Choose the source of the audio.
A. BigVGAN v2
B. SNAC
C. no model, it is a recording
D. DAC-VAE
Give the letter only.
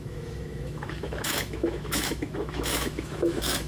D